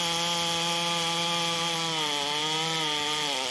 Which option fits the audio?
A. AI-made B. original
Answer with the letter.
B